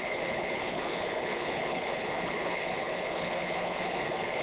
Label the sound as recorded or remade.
remade